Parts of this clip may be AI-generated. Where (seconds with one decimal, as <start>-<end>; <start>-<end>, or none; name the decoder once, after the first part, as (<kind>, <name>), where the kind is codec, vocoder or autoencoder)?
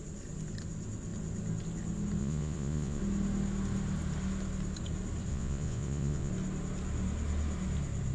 2.2-3.0 (vocoder, Vocos); 5.3-6.3